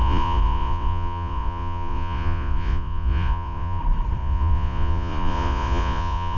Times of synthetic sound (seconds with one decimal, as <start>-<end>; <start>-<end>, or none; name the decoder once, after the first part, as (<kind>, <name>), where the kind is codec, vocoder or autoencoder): 0.0-3.8 (vocoder, Vocos); 4.2-6.4